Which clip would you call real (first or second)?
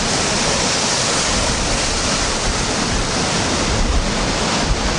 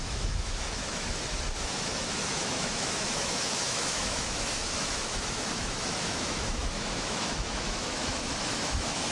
first